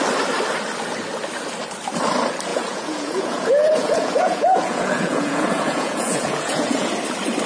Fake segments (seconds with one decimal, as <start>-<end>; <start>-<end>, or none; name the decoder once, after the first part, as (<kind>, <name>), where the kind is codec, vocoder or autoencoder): 2.5-6.9 (vocoder, Vocos)